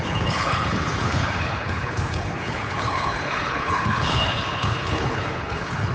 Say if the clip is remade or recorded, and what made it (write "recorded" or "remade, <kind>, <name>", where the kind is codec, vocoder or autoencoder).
remade, codec, HILCodec